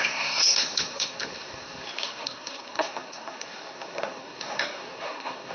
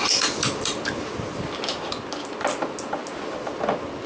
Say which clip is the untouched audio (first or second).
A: second